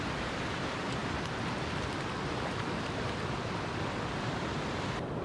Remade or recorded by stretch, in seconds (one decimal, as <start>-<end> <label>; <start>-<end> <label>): 0.0-5.2 recorded